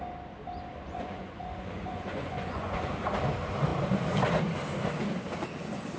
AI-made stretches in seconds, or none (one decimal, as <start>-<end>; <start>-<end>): 0.7-2.9